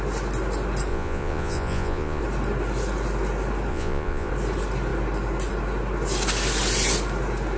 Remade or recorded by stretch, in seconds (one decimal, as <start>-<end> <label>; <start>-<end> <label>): 0.0-0.9 recorded; 0.9-2.2 remade; 2.2-3.7 recorded; 3.7-4.3 remade; 4.3-7.6 recorded